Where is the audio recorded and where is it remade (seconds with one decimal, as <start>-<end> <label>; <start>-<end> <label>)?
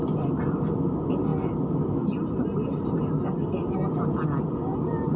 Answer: 0.0-5.2 recorded